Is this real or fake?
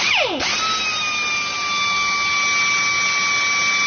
real